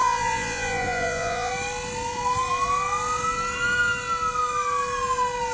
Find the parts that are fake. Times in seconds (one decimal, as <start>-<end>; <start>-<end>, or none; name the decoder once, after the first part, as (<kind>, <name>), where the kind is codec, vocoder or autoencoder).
0.0-1.5 (vocoder, Vocos)